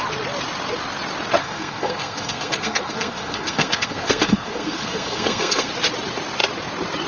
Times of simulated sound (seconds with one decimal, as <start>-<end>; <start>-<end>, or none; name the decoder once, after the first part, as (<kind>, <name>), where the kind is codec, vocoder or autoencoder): 1.4-5.7 (codec, SNAC)